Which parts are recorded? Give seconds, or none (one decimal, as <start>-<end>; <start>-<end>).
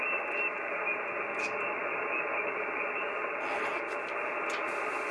0.0-5.1